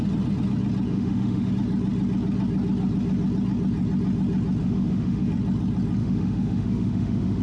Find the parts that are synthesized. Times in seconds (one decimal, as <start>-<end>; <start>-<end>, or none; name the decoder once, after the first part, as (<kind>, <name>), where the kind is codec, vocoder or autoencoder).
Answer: 0.9-1.5 (autoencoder, DAC-VAE); 4.6-5.3; 6.0-7.4